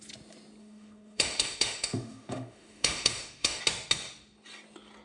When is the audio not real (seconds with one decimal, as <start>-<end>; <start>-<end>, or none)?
0.6-3.6